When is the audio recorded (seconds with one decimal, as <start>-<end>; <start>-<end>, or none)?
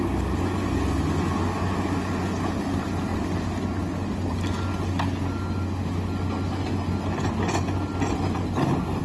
0.0-9.0